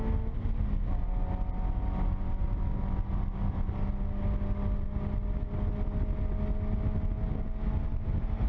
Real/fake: real